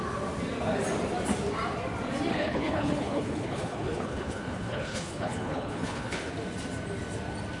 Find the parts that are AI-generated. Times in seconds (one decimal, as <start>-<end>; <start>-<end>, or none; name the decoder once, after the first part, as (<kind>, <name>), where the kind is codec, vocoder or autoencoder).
2.3-6.3 (codec, HILCodec)